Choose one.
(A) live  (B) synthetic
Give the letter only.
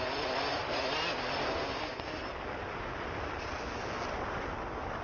A